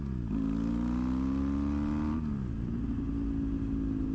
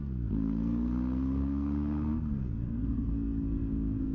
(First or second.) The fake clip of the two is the second